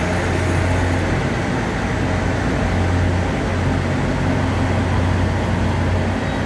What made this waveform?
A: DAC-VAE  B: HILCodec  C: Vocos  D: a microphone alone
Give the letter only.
D